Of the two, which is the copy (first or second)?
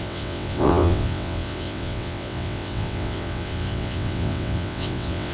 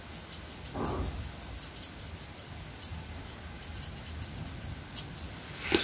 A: first